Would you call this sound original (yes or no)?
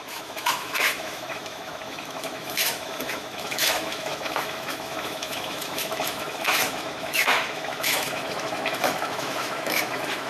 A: no